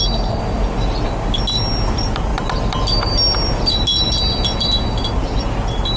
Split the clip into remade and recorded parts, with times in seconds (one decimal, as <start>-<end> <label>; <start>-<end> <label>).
0.0-6.0 recorded